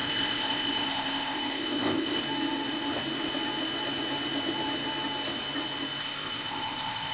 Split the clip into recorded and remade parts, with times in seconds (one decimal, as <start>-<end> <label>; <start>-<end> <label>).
0.0-2.2 remade; 2.2-6.0 recorded; 6.0-7.1 remade

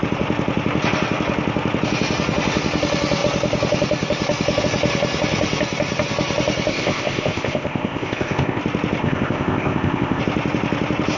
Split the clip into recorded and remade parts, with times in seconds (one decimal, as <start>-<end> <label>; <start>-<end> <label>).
0.0-6.7 recorded; 6.7-8.6 remade; 8.6-9.0 recorded; 9.0-10.2 remade; 10.2-11.2 recorded

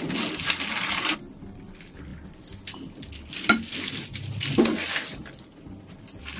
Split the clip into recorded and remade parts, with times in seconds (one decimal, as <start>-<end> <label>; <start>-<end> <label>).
0.0-6.4 recorded

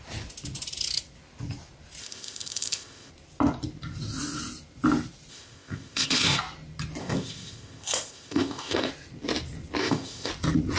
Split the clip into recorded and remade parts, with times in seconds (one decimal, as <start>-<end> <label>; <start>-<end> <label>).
0.0-2.0 recorded; 2.0-3.1 remade; 3.1-5.3 recorded; 5.3-6.4 remade; 6.4-7.0 recorded; 7.0-8.9 remade; 8.9-9.8 recorded; 9.8-10.3 remade; 10.3-10.8 recorded

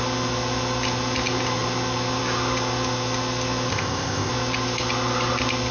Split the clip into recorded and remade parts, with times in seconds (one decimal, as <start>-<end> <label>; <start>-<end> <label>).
0.0-3.7 recorded; 3.7-4.3 remade; 4.3-5.7 recorded

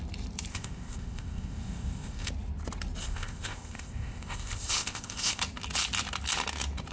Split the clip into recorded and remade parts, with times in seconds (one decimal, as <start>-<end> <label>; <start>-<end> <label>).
0.0-0.5 recorded; 0.5-2.3 remade; 2.3-3.0 recorded; 3.0-5.4 remade; 5.4-6.9 recorded

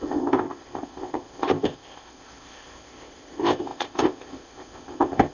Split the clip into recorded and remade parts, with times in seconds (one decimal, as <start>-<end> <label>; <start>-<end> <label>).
0.0-5.3 remade